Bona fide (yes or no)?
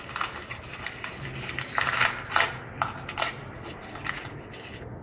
yes